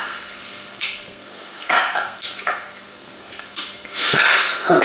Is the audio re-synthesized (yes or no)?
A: yes